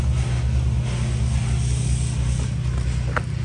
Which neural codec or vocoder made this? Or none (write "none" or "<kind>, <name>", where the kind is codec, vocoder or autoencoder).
none